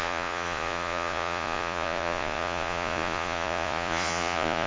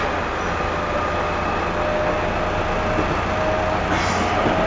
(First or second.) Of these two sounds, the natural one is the second